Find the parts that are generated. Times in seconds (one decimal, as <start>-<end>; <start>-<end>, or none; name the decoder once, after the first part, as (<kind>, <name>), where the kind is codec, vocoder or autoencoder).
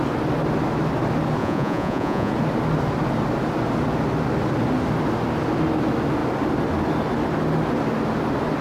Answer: 1.4-2.3 (vocoder, Vocos)